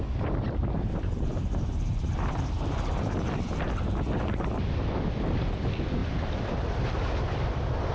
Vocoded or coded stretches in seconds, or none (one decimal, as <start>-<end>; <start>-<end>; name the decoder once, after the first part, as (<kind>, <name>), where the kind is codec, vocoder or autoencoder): 0.6-3.5 (vocoder, BigVGAN v2); 6.0-7.1